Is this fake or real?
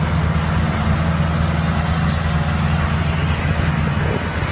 real